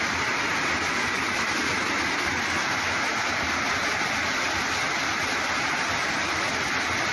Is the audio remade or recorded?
recorded